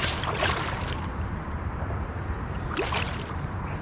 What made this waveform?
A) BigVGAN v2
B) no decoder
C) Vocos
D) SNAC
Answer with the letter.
A